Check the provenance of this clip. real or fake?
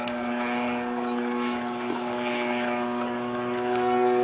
fake